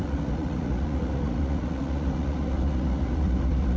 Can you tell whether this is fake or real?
fake